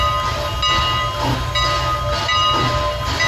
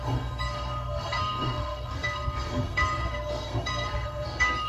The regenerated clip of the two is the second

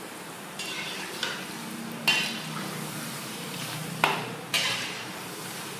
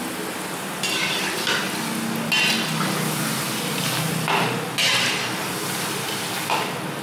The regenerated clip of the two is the first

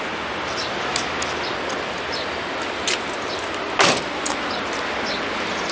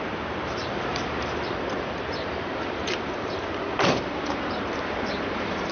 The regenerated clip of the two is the second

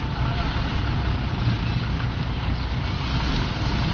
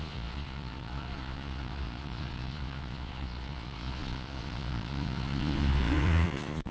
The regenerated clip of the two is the second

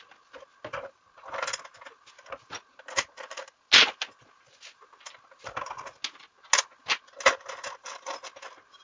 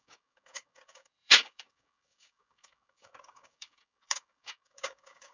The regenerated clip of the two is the second